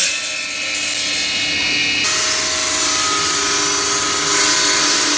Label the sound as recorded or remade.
recorded